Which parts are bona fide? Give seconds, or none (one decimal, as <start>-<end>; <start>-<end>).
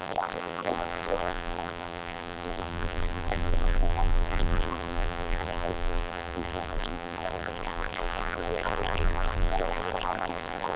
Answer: none